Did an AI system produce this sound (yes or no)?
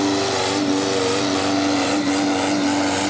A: no